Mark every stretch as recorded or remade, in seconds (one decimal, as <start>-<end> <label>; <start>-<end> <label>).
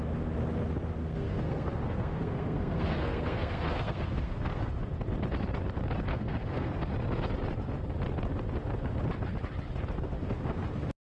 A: 0.0-1.0 recorded; 1.0-4.6 remade; 4.6-6.1 recorded; 6.1-6.7 remade; 6.7-11.1 recorded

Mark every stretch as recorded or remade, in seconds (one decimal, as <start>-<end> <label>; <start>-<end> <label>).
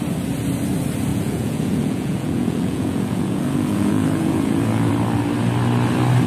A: 0.0-1.1 recorded; 1.1-4.9 remade; 4.9-6.3 recorded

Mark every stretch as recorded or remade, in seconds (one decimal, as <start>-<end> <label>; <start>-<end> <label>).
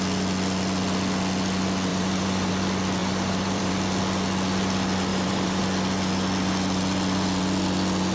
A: 0.0-1.9 recorded; 1.9-2.5 remade; 2.5-3.0 recorded; 3.0-3.7 remade; 3.7-5.1 recorded; 5.1-5.6 remade; 5.6-8.1 recorded